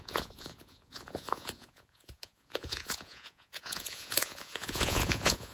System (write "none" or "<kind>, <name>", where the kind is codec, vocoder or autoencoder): vocoder, Vocos